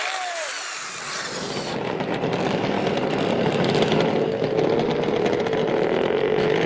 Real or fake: real